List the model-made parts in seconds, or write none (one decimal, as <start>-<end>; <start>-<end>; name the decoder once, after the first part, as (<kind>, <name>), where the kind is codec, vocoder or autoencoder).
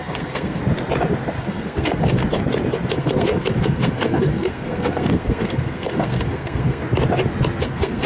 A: 0.0-0.6 (codec, SNAC); 1.4-2.2; 2.9-6.8; 7.6-8.1